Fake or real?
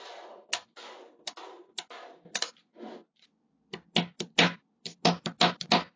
real